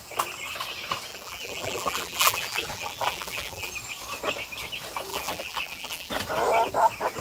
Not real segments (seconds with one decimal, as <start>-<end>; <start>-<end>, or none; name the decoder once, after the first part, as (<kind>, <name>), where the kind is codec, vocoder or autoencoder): 1.1-3.7 (vocoder, BigVGAN v2); 5.1-6.1